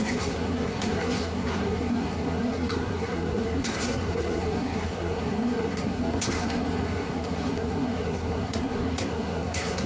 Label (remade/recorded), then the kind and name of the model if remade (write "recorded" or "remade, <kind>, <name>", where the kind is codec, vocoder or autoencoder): remade, codec, SNAC